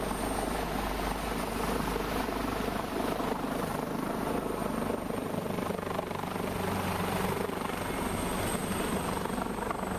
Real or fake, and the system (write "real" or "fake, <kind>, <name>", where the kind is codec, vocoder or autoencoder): fake, vocoder, BigVGAN v2